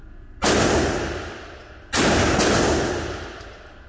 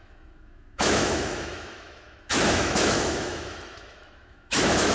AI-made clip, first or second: second